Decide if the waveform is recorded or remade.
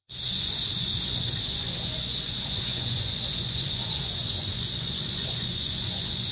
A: remade